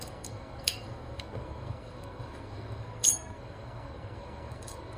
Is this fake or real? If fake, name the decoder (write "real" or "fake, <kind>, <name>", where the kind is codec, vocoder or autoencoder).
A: fake, codec, SNAC